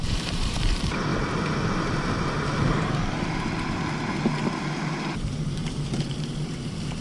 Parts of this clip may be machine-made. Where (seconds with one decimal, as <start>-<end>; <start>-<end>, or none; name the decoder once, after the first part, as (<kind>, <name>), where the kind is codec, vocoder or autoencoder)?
0.0-1.1 (vocoder, BigVGAN v2); 5.0-7.0